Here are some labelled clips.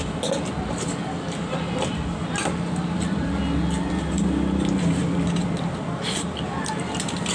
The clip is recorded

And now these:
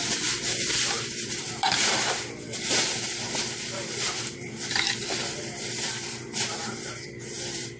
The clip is remade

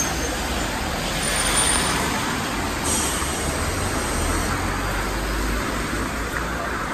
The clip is recorded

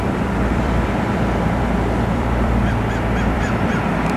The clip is remade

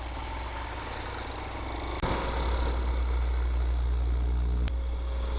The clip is recorded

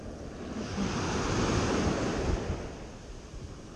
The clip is recorded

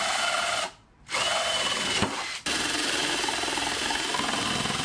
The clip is remade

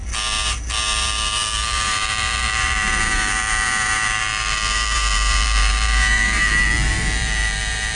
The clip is remade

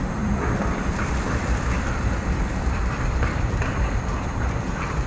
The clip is remade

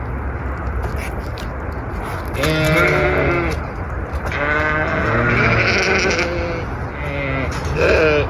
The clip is recorded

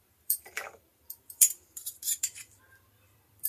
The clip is remade